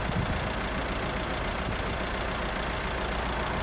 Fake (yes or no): no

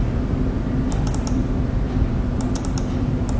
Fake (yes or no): no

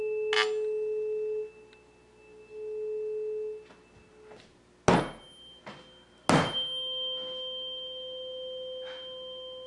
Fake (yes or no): no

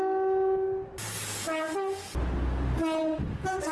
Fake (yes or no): no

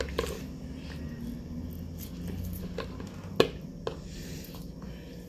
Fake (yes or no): no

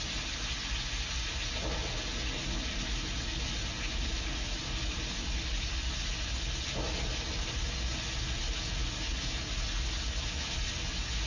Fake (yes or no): no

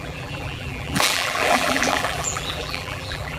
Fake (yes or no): yes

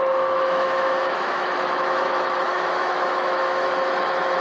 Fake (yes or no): yes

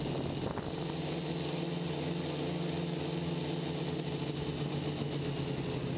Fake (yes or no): no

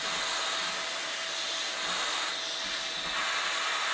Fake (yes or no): no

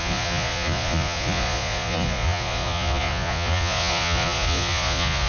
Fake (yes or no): yes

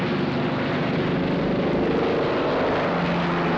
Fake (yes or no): no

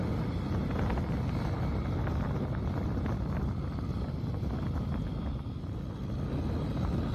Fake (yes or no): no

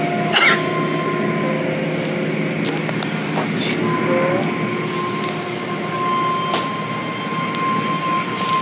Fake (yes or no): no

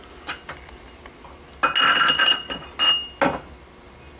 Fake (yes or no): no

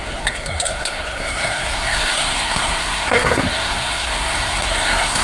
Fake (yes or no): yes